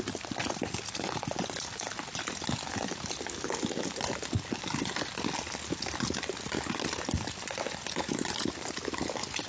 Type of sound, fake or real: real